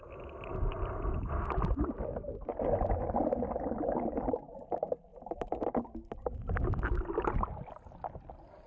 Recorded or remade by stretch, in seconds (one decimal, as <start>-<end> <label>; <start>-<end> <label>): 0.0-8.7 recorded

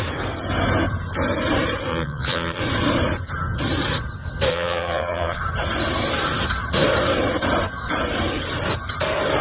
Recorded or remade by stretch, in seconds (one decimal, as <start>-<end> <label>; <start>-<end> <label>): 0.0-1.9 recorded; 1.9-2.6 remade; 2.6-4.5 recorded; 4.5-5.4 remade; 5.4-9.4 recorded

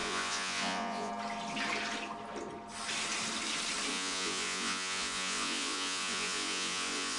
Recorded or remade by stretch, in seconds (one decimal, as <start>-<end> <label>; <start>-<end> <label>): 0.0-1.1 remade; 1.1-3.9 recorded; 3.9-7.2 remade